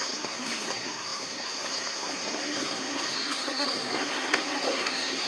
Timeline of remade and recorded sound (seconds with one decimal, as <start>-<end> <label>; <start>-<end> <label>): 0.0-5.3 remade